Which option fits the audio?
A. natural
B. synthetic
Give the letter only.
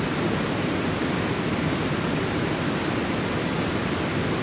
A